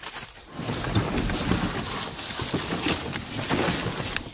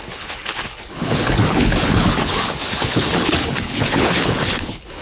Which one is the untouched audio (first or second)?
first